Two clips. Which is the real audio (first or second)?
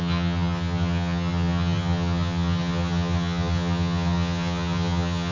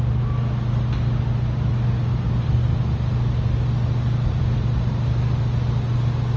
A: second